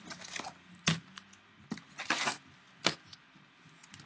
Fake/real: real